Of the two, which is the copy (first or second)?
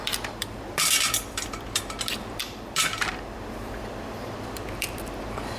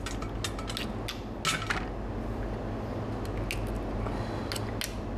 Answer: first